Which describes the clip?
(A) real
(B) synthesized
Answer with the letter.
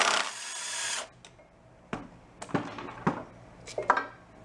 A